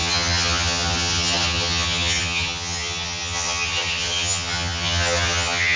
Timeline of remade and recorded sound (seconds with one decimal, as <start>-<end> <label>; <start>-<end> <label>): 0.0-5.8 remade